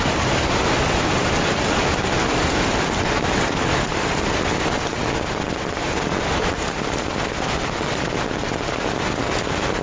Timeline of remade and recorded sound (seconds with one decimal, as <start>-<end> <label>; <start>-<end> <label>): 0.0-9.8 recorded